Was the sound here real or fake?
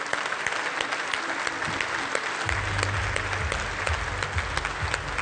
real